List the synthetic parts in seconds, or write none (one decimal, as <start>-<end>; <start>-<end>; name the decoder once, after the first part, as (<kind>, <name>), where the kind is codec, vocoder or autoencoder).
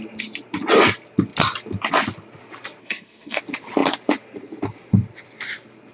2.8-3.4 (codec, SNAC)